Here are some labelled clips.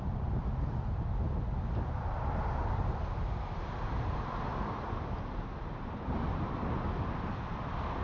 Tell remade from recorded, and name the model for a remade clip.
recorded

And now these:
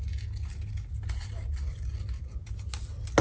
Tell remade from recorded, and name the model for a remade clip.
recorded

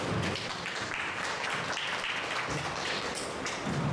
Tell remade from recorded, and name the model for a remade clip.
recorded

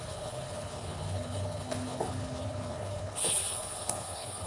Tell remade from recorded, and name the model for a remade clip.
remade, codec, HILCodec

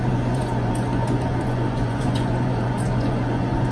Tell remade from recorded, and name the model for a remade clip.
remade, vocoder, Vocos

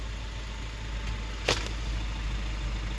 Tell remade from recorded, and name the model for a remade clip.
recorded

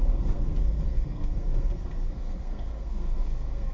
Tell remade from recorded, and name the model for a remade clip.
remade, codec, SNAC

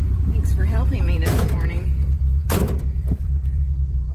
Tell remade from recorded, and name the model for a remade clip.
remade, vocoder, BigVGAN v2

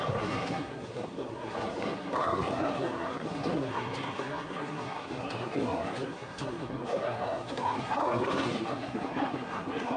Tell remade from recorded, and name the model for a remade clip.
remade, codec, SNAC